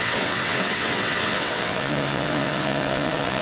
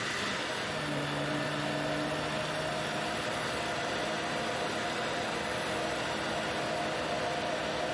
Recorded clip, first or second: second